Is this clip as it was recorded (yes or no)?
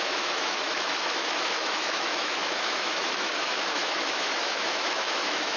no